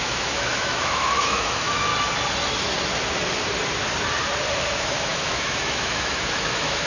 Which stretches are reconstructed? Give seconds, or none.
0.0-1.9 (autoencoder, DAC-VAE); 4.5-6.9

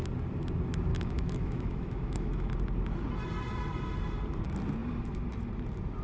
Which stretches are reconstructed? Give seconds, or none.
0.9-2.5 (autoencoder, DAC-VAE)

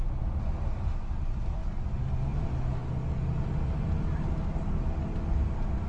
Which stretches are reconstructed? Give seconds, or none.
none

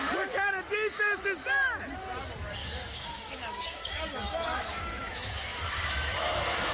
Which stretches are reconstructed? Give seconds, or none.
2.6-6.7 (autoencoder, DAC-VAE)

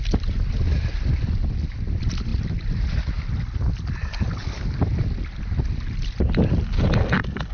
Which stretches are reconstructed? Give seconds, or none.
none

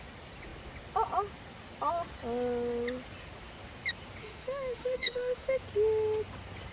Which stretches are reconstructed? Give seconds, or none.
4.2-5.6 (autoencoder, DAC-VAE)

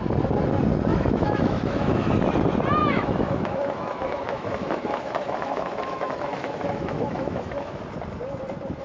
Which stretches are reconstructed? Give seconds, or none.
0.9-2.1 (autoencoder, DAC-VAE); 2.8-7.8